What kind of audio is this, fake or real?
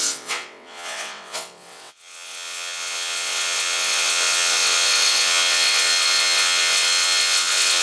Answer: fake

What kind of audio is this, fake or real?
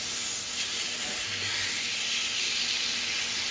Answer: real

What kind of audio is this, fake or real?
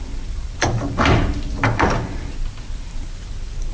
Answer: real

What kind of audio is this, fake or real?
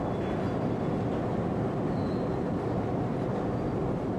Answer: real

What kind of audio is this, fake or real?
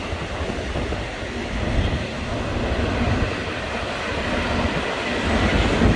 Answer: real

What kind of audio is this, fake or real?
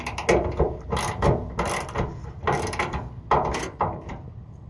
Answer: real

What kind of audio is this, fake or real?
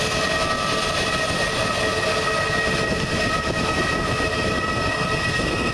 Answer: real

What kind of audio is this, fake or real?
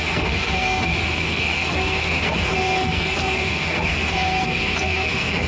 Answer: fake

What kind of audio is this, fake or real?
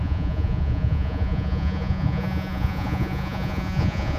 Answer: fake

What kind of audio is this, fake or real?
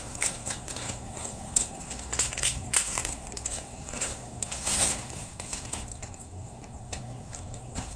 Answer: fake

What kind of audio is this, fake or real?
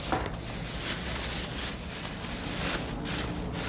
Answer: real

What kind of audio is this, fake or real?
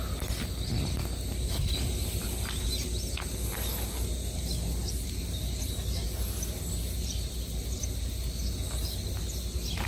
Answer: real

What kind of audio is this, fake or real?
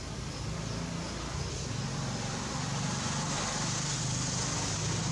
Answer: real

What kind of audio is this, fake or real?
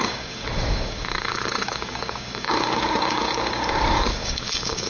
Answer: fake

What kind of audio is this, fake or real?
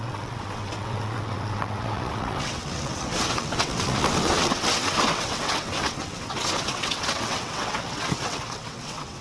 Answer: fake